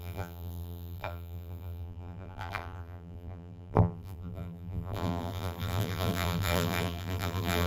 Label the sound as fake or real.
fake